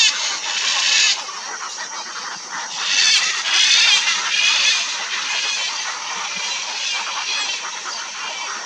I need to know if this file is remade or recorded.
recorded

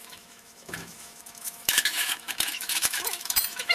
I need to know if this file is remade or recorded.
remade